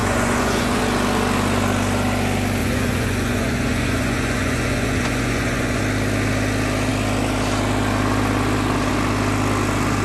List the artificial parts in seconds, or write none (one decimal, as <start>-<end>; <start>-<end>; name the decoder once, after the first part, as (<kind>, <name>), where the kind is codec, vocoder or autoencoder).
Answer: 0.0-0.8 (vocoder, Vocos); 2.6-5.8